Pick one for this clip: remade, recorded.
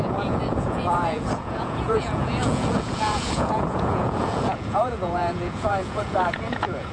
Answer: remade